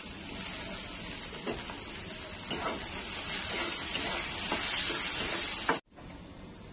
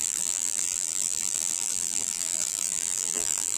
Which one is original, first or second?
first